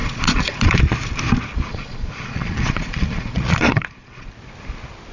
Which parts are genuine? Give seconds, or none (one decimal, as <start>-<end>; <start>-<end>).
0.8-1.7; 4.3-5.1